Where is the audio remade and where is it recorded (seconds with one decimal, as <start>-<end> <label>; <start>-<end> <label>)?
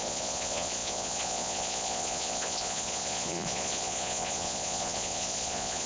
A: 0.0-5.9 remade